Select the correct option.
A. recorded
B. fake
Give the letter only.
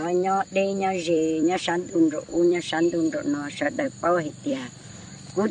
B